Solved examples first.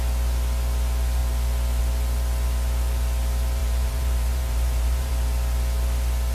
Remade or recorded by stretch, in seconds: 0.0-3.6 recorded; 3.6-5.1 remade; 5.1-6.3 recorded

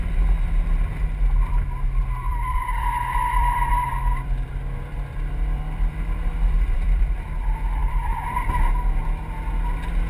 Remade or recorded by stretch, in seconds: 0.0-2.3 recorded; 2.3-7.2 remade; 7.2-7.8 recorded; 7.8-8.6 remade; 8.6-10.1 recorded

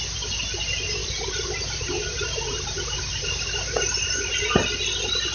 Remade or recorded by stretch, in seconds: 0.0-1.0 recorded; 1.0-2.8 remade; 2.8-5.3 recorded